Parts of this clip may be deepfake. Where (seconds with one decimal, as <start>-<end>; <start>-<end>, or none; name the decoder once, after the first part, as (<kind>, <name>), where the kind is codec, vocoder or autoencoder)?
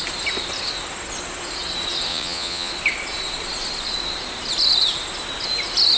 2.1-2.7 (vocoder, Vocos)